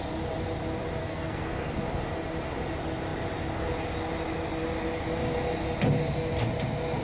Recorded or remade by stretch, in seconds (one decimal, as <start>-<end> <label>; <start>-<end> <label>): 0.0-1.0 recorded; 1.0-1.7 remade; 1.7-7.0 recorded